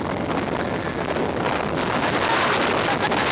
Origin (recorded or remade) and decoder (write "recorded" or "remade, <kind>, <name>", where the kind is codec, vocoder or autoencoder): recorded